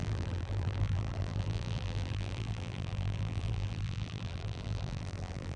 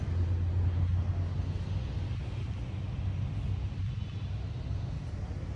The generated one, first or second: first